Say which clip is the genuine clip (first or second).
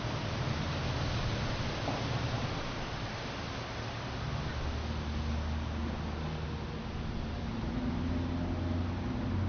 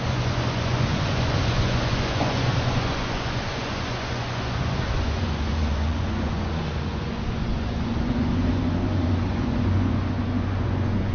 first